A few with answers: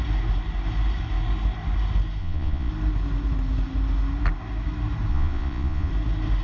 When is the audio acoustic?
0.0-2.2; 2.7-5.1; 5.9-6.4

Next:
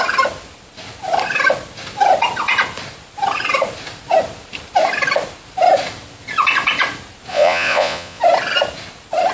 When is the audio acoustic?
0.0-7.3; 8.2-9.3

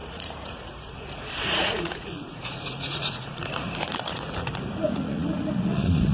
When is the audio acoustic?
none

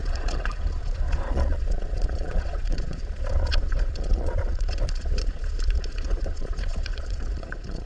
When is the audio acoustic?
none